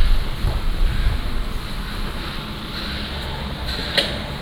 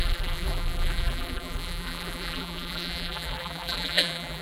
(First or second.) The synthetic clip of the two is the second